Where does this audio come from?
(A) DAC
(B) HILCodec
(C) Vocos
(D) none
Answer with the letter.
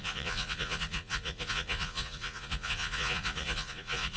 C